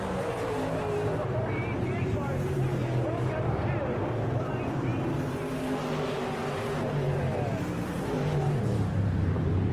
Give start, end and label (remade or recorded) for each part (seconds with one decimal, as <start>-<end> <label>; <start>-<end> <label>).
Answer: 0.0-4.9 remade; 4.9-5.5 recorded; 5.5-9.7 remade